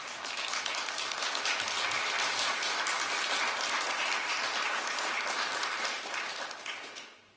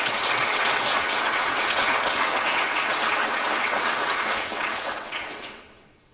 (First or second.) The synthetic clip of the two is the second